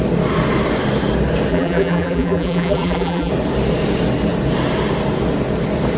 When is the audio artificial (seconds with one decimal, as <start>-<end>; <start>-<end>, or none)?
1.5-3.3